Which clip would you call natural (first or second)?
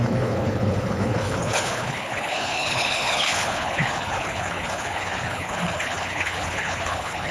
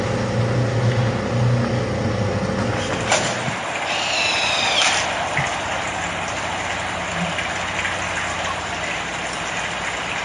second